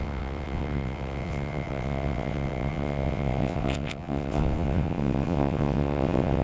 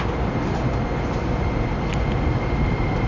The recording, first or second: second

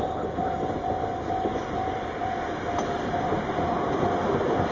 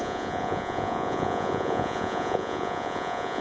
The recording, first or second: first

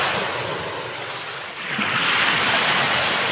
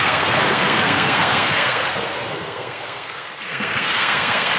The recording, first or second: first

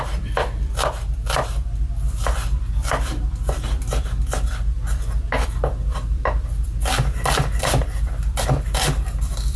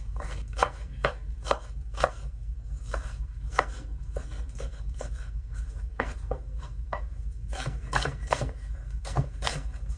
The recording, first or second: first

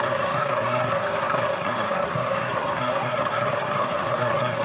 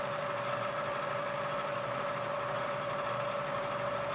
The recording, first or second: second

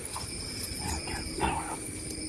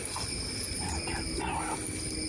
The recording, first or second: second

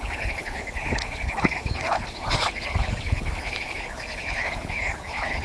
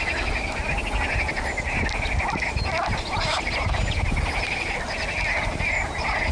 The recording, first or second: second